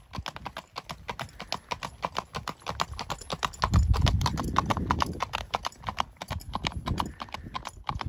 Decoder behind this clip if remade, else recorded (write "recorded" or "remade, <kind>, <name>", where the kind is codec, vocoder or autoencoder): recorded